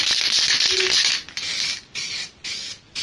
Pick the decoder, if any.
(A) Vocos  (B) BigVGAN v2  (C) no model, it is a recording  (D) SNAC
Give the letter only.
C